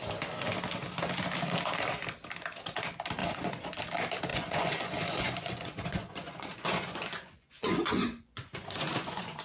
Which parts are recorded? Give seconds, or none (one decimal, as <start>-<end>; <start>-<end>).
0.0-3.2; 3.8-4.3